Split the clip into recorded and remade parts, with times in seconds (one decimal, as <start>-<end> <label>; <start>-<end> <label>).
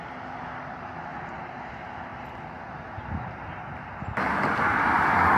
0.0-5.4 recorded